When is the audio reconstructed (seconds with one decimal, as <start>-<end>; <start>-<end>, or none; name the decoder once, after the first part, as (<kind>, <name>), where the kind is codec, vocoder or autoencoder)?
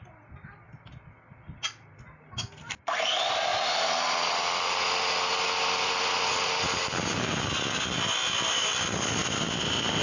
none